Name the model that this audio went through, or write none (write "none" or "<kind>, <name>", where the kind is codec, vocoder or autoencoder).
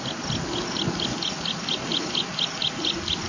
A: none